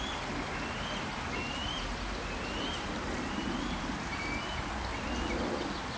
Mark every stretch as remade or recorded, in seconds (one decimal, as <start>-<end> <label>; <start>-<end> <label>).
0.0-1.1 recorded; 1.1-4.7 remade; 4.7-6.0 recorded